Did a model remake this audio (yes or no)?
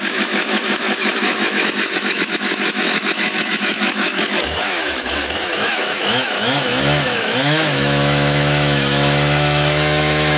yes